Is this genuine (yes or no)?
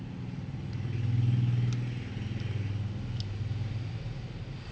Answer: yes